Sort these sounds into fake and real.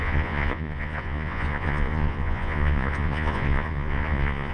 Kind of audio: fake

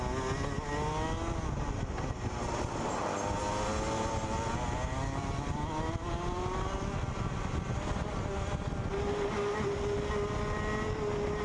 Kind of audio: real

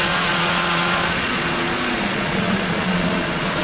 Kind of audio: fake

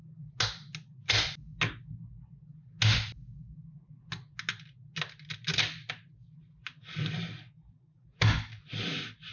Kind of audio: real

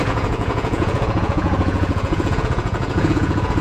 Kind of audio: fake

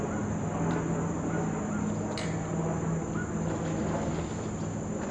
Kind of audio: real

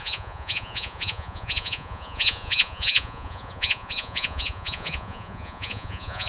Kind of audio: fake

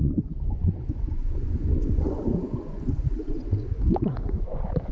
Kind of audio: fake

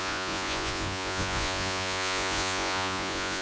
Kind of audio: fake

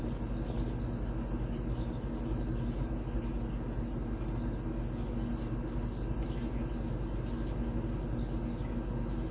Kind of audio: real